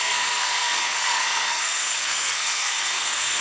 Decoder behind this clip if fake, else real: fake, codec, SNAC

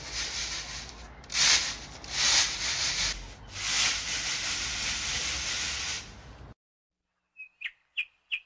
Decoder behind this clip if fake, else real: real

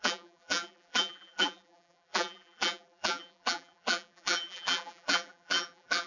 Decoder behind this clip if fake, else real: fake, vocoder, BigVGAN v2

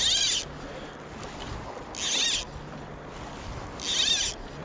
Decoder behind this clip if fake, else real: real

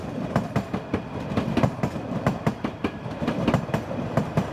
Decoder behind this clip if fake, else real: fake, vocoder, BigVGAN v2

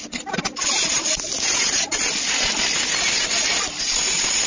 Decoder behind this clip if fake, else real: real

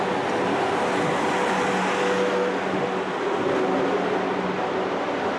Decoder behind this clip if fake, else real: real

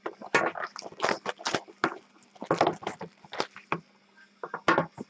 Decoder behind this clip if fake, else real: real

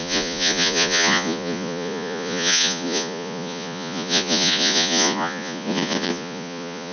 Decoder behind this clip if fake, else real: fake, vocoder, Vocos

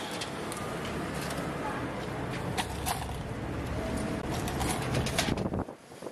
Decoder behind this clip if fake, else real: real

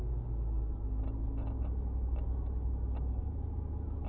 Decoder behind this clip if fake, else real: real